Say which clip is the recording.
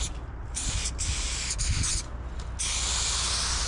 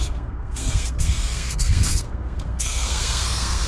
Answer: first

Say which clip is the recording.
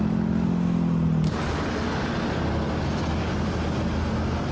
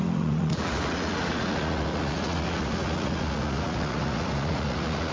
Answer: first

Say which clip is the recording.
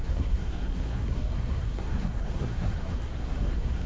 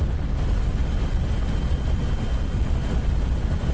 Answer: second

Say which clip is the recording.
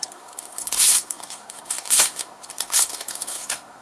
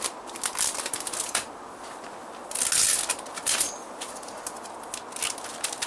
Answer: second